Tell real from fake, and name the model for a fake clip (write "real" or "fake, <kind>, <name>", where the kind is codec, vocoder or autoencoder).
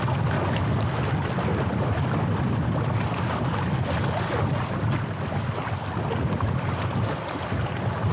real